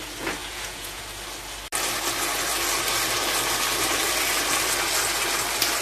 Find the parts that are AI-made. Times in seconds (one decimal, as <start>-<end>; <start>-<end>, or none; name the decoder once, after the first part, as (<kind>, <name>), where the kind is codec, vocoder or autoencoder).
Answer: 0.4-1.0 (vocoder, Vocos)